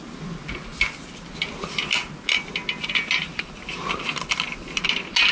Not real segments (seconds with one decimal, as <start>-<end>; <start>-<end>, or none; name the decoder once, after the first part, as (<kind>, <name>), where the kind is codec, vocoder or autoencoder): none